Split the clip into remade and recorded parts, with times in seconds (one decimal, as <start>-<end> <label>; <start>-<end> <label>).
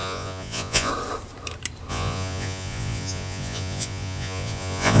0.0-0.9 remade; 0.9-1.9 recorded; 1.9-5.0 remade